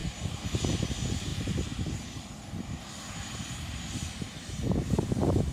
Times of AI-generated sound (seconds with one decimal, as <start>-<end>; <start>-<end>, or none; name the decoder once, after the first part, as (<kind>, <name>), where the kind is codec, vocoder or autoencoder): none